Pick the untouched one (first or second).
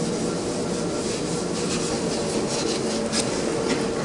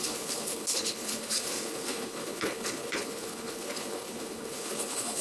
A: first